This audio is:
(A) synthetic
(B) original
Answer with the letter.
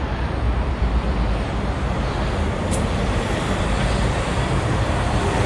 A